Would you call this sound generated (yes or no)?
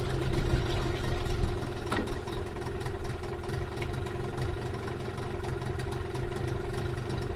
no